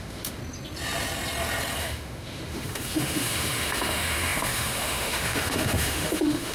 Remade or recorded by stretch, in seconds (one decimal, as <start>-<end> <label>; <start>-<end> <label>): 0.0-0.4 remade; 0.4-1.8 recorded; 1.8-6.5 remade